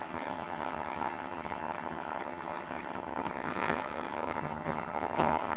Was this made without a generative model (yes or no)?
no